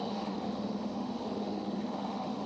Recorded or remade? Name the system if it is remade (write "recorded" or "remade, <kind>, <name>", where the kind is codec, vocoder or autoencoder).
remade, autoencoder, DAC-VAE